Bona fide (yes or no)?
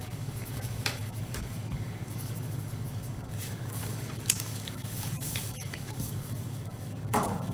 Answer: no